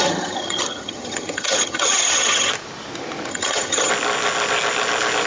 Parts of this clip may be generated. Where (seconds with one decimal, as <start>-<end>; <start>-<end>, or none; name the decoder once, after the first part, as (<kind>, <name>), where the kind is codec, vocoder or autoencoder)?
0.0-2.5 (vocoder, HiFi-GAN); 3.3-3.9